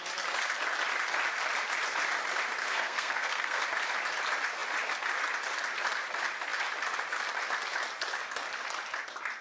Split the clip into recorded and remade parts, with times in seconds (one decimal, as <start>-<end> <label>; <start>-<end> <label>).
0.0-2.6 recorded; 2.6-3.6 remade; 3.6-9.4 recorded